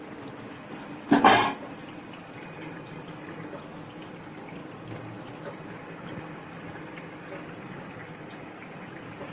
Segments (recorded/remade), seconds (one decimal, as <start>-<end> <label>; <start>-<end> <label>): 0.0-9.3 recorded